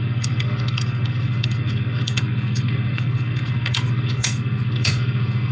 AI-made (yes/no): yes